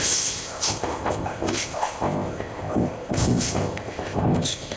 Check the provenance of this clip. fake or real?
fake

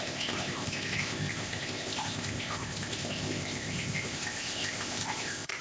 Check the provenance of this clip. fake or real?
fake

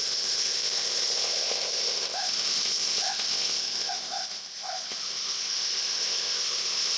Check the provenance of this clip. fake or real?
fake